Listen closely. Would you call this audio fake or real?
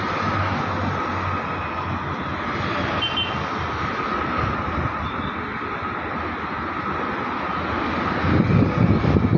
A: real